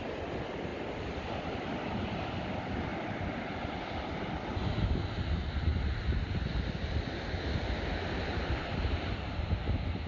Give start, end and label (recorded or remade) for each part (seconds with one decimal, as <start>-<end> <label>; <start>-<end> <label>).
0.0-2.9 remade; 2.9-4.8 recorded; 4.8-10.1 remade